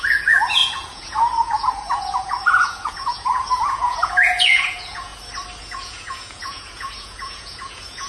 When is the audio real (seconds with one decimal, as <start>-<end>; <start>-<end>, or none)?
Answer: 5.1-5.6

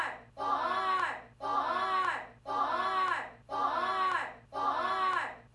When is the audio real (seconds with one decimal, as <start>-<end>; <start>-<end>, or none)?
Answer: 0.0-5.5

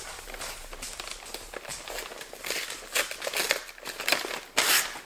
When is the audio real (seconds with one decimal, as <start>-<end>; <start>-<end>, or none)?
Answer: 0.0-5.1